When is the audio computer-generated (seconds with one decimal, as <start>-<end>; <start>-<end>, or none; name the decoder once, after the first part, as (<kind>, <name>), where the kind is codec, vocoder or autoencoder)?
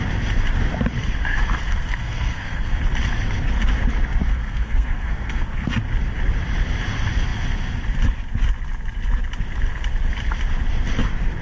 1.6-2.8 (codec, SNAC); 4.2-5.7